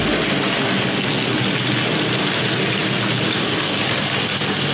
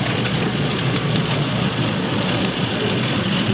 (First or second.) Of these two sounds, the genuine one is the first